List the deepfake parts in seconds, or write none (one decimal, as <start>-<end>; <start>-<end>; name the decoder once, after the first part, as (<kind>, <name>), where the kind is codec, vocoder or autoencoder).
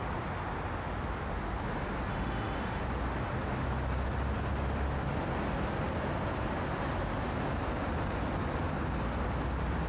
2.1-2.8 (autoencoder, DAC-VAE)